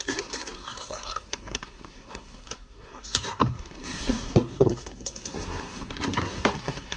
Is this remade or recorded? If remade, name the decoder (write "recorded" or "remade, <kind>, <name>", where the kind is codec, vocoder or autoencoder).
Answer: remade, codec, SNAC